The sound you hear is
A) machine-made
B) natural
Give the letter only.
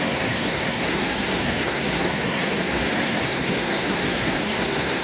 A